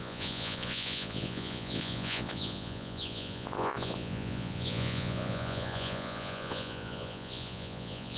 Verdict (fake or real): fake